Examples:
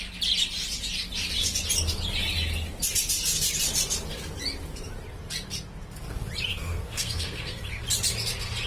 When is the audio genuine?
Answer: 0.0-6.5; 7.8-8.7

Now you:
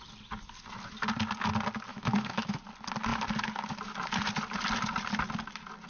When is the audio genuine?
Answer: 0.0-1.9; 2.6-5.9